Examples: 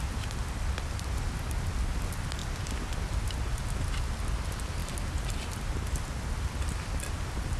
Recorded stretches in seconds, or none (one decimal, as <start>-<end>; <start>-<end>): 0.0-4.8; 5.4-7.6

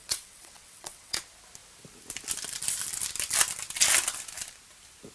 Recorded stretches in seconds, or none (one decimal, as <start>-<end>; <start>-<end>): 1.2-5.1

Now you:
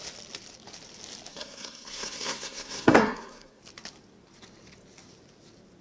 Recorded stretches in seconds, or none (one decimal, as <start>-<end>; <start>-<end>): 0.0-1.3; 3.6-5.8